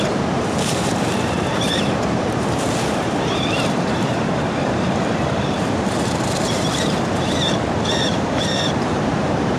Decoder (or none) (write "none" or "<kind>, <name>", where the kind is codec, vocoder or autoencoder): vocoder, BigVGAN v2